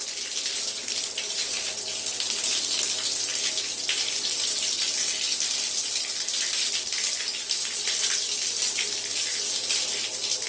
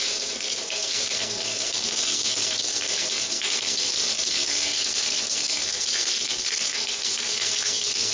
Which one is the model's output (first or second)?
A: second